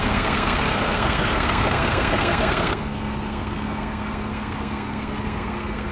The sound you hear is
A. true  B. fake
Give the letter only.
B